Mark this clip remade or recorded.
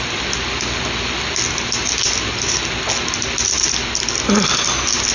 recorded